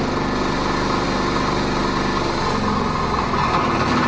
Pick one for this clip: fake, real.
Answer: real